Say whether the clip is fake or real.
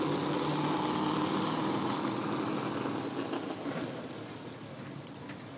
real